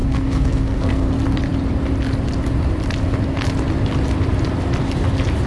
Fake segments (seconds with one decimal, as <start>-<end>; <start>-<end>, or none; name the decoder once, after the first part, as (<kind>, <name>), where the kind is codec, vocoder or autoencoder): 0.0-1.1 (codec, SNAC)